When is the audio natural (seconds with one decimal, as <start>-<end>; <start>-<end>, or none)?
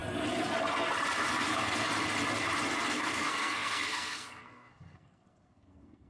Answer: 0.0-2.9